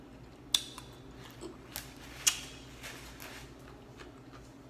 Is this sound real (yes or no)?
yes